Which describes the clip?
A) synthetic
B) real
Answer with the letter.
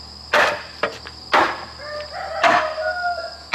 B